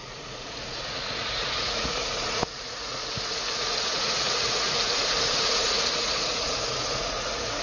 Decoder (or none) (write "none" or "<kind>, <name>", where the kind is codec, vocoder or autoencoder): vocoder, Vocos